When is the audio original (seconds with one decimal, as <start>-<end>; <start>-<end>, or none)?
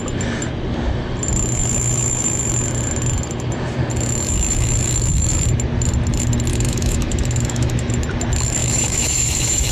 0.0-6.5; 7.9-8.6